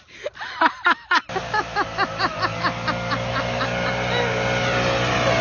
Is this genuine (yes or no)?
yes